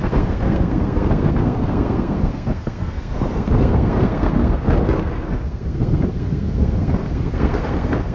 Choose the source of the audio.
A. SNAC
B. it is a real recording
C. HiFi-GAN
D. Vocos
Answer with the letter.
A